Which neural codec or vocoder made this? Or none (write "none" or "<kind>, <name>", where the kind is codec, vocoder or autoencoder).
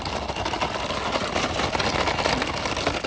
none